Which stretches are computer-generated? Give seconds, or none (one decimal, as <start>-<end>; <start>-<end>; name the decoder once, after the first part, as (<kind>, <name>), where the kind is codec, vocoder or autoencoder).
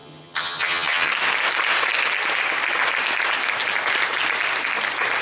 0.0-1.1 (vocoder, HiFi-GAN)